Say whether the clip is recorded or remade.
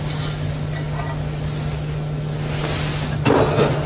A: recorded